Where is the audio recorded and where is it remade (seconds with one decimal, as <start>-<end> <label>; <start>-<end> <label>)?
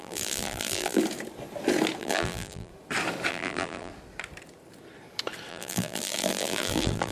0.0-1.0 remade; 1.0-2.0 recorded; 2.0-2.7 remade; 2.7-3.3 recorded; 3.3-3.9 remade; 3.9-5.5 recorded; 5.5-7.1 remade